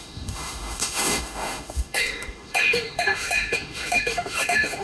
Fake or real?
fake